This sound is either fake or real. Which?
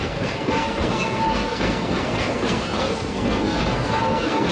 fake